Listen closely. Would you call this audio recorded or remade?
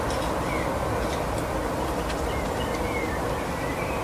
recorded